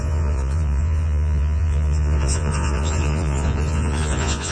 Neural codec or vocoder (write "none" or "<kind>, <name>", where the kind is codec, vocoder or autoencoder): vocoder, Vocos